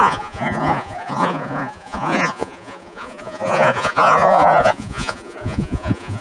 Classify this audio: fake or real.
fake